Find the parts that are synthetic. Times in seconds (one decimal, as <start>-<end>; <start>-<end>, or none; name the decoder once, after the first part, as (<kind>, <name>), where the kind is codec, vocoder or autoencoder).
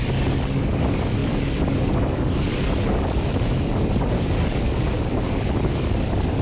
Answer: 0.0-6.4 (codec, DAC)